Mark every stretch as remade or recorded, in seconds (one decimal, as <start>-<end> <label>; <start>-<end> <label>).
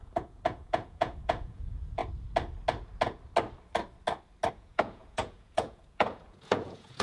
0.0-2.0 remade; 2.0-4.5 recorded; 4.5-7.0 remade